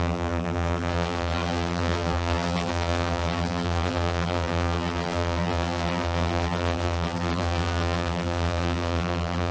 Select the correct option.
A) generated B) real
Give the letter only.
A